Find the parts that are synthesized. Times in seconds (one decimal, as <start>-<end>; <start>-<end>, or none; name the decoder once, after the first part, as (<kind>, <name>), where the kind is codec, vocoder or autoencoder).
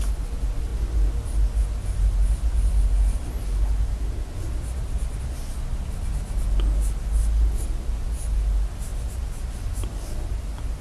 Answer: none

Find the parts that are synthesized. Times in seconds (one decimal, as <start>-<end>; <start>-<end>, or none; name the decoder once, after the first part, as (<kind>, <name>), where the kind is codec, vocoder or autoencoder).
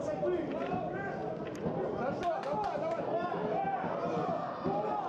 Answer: none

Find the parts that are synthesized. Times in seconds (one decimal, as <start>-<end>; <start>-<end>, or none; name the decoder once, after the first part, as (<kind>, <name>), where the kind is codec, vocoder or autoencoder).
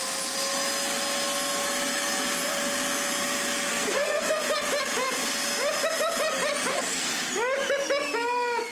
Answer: 3.7-4.4 (codec, SNAC); 6.7-7.3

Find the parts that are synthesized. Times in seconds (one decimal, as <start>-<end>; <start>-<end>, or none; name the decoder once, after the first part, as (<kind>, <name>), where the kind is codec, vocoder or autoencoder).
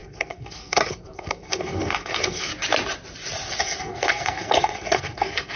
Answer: 0.0-2.5 (codec, SNAC); 3.6-5.6